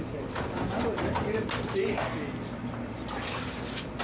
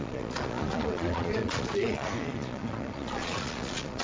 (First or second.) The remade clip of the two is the second